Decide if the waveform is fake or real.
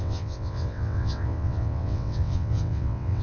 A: fake